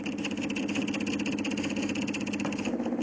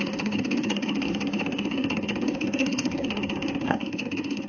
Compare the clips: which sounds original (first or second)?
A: first